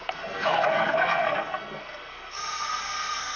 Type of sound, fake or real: fake